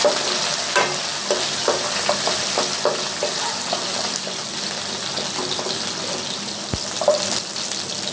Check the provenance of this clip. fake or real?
real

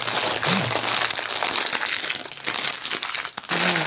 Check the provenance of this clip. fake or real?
real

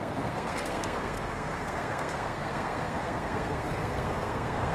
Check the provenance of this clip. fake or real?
fake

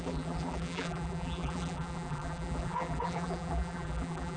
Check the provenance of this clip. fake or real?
fake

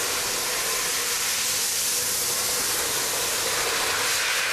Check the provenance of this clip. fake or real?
real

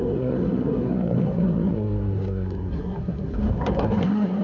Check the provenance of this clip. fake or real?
fake